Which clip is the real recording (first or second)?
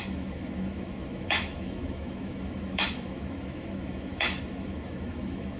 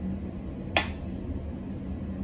second